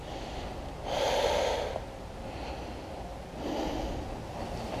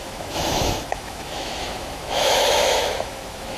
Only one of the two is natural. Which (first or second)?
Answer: first